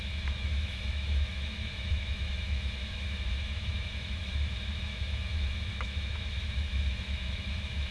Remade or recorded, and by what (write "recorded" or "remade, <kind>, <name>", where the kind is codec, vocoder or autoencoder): remade, autoencoder, DAC-VAE